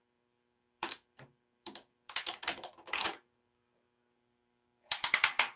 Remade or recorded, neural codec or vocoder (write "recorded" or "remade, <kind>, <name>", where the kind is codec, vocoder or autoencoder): remade, codec, DAC